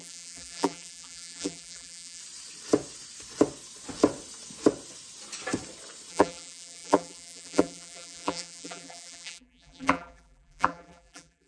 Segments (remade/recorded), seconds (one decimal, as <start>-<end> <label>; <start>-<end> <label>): 0.0-2.2 remade; 2.2-6.1 recorded; 6.1-11.5 remade